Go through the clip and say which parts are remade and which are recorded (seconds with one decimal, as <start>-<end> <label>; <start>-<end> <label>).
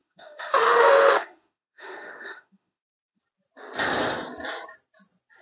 0.0-3.2 remade; 3.2-5.4 recorded